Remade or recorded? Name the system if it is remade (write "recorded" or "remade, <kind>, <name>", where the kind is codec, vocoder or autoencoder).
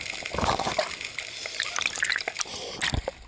recorded